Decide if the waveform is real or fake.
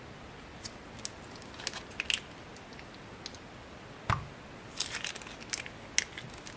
real